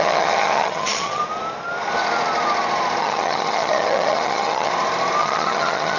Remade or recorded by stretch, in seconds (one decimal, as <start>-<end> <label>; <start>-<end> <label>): 0.0-1.2 remade; 1.2-3.0 recorded; 3.0-4.7 remade; 4.7-5.2 recorded; 5.2-6.0 remade